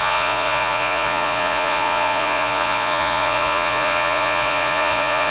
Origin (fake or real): fake